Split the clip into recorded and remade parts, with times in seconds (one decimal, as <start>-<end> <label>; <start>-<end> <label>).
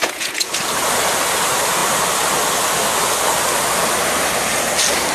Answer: 0.0-0.5 remade; 0.5-5.1 recorded